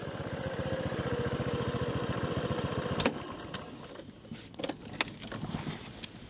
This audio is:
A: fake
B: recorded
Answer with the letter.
B